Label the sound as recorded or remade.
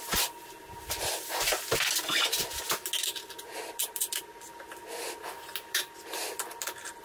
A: recorded